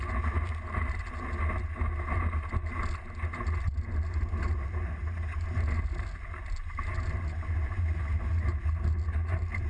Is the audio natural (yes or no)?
yes